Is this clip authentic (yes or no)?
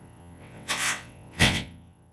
no